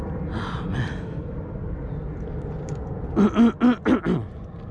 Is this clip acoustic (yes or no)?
yes